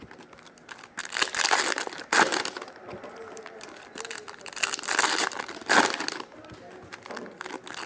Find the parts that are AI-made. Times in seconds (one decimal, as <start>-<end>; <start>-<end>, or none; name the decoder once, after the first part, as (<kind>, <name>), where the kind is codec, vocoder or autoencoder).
none